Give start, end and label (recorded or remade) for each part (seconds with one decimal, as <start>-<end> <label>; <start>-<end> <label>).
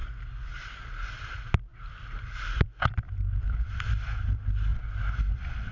0.0-0.8 remade; 0.8-5.7 recorded